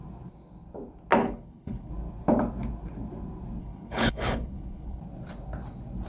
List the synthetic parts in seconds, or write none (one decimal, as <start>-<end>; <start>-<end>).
1.2-1.9; 3.6-5.0